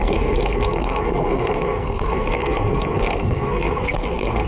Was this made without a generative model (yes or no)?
no